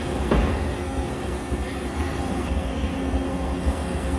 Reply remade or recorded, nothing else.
remade